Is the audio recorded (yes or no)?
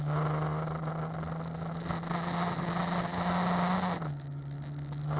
yes